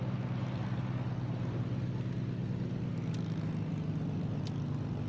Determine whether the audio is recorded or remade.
recorded